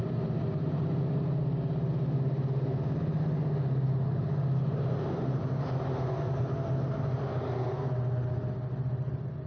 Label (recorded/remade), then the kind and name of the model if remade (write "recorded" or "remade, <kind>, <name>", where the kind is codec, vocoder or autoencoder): recorded